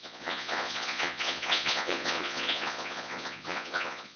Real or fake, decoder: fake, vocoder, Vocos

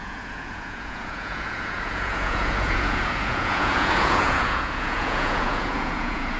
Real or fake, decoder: fake, vocoder, Vocos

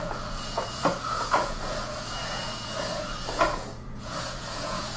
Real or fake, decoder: fake, vocoder, Vocos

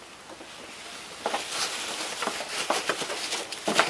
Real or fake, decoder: real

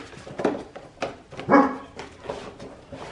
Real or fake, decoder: real